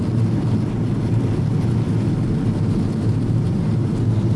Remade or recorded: recorded